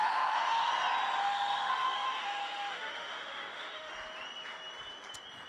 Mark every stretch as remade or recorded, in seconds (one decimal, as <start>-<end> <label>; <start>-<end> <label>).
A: 0.0-0.7 remade; 0.7-1.2 recorded; 1.2-3.9 remade; 3.9-5.5 recorded